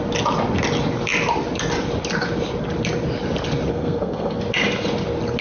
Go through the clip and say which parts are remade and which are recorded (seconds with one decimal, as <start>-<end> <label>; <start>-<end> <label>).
0.0-3.7 recorded; 3.7-4.4 remade; 4.4-5.4 recorded